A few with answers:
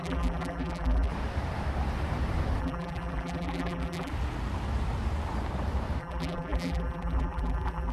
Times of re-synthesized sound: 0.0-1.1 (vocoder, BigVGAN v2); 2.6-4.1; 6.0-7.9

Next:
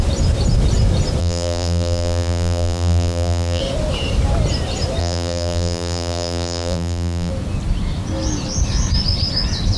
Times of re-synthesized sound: 1.2-3.6 (vocoder, BigVGAN v2); 5.0-7.3

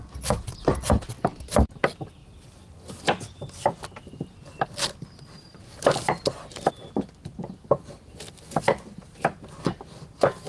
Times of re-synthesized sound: none